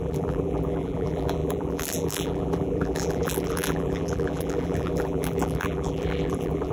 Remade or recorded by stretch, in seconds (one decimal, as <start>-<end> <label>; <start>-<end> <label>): 0.0-6.7 remade